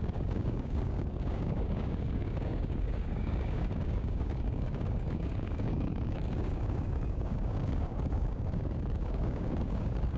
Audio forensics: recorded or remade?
remade